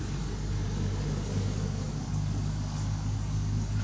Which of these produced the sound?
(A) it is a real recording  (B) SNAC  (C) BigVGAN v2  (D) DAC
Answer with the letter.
D